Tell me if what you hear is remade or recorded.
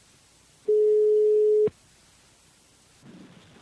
recorded